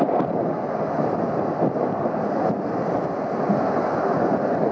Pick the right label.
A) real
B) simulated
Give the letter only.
A